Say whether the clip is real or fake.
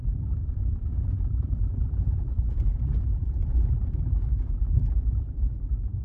fake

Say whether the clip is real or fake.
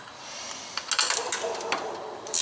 real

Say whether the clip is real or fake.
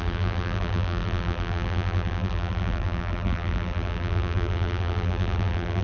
fake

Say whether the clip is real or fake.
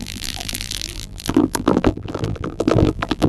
fake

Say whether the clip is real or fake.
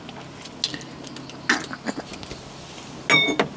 real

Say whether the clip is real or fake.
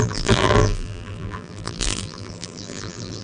fake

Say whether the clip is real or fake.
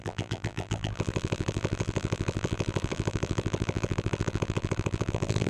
fake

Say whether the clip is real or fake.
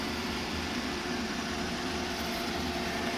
fake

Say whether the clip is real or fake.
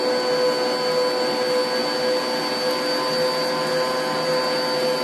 real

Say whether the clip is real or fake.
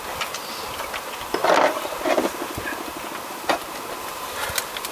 real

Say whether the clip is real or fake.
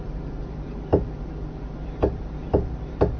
fake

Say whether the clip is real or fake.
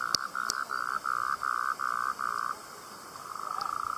real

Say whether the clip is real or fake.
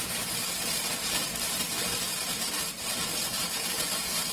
fake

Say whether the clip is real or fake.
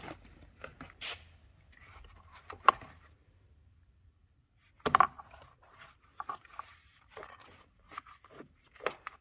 fake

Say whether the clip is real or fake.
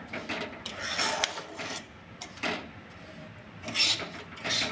real